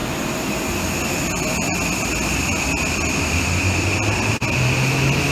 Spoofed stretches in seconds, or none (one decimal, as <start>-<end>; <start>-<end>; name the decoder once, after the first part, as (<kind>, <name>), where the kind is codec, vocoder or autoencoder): none